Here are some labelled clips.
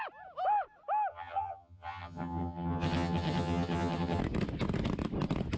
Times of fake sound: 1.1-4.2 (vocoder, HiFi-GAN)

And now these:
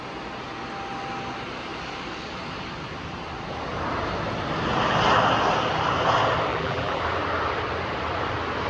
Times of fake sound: 6.5-7.0 (vocoder, BigVGAN v2)

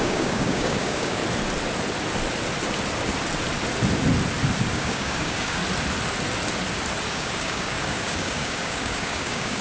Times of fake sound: 0.0-1.2 (codec, DAC); 4.7-5.6; 7.1-9.6

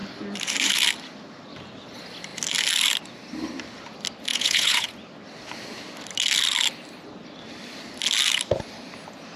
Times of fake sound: 4.3-4.9 (vocoder, Vocos)

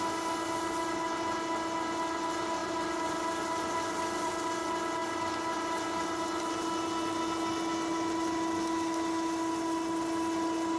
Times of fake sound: 2.6-4.3 (vocoder, BigVGAN v2)

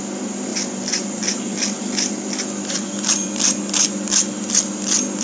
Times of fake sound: 0.5-3.6 (vocoder, BigVGAN v2)